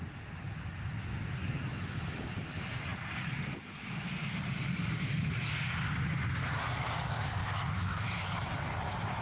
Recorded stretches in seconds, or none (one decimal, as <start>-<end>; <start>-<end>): 0.0-1.7; 2.2-7.4; 8.5-9.2